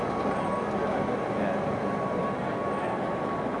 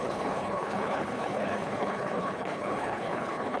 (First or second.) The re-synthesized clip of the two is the second